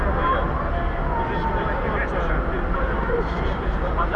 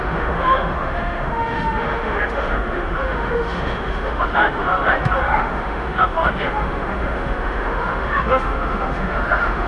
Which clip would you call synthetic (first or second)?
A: second